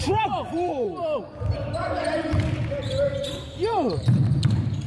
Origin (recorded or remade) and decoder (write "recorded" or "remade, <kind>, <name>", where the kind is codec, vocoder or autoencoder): remade, vocoder, BigVGAN v2